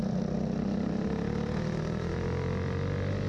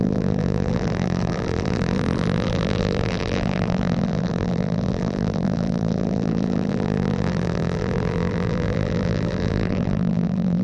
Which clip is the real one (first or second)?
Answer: first